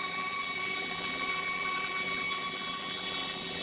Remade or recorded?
remade